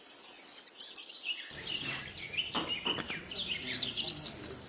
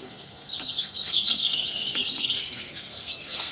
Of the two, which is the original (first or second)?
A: first